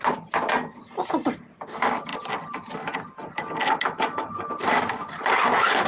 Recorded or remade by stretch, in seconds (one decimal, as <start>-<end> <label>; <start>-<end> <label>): 0.0-5.9 recorded